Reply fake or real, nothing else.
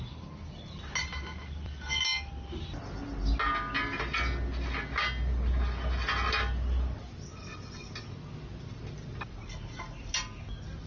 real